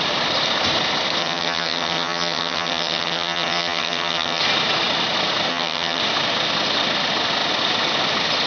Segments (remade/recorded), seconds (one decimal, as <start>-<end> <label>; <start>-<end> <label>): 0.0-1.2 recorded; 1.2-4.4 remade; 4.4-5.5 recorded; 5.5-6.0 remade; 6.0-8.5 recorded